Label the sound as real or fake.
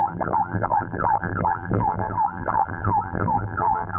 fake